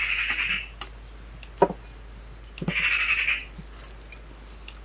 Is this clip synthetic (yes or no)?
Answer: no